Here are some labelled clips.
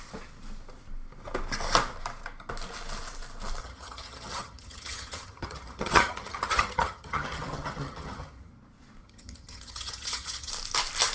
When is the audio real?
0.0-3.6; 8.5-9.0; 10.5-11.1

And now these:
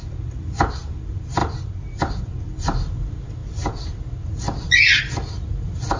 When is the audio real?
0.0-6.0

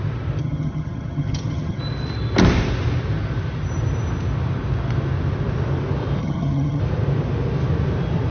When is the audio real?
0.0-0.4; 1.8-6.2; 6.8-8.3

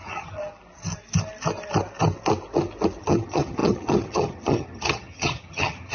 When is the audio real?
0.4-3.0

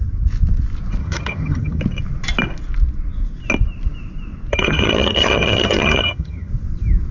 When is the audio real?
0.0-1.0; 1.8-4.5; 6.5-7.1

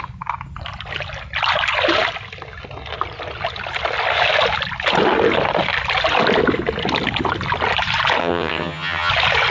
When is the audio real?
0.0-8.2; 9.1-9.5

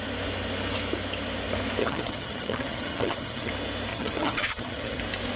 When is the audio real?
0.0-1.8; 3.5-3.9; 5.0-5.4